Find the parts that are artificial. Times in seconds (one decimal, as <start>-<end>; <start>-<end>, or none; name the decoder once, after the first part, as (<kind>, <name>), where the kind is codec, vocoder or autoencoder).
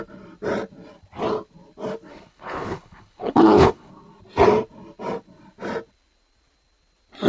2.1-3.9 (codec, HILCodec)